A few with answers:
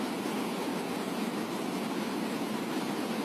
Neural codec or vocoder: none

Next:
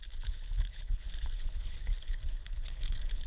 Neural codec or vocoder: codec, HILCodec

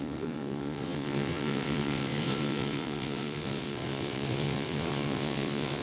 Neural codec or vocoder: vocoder, WaveNeXt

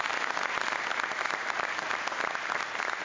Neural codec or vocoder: none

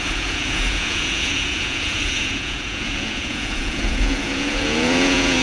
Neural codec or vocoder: vocoder, Vocos